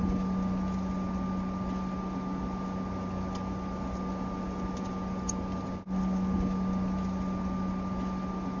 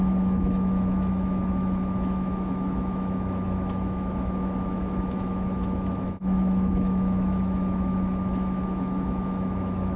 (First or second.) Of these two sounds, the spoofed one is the second